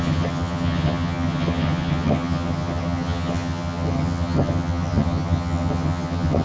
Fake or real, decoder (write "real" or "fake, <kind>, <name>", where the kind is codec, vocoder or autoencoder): fake, vocoder, HiFi-GAN